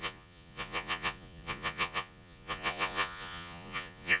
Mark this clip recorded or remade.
remade